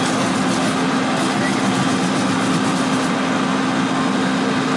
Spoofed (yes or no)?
no